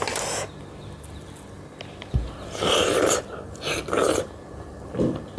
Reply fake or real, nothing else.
real